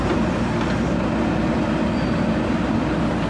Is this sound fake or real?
real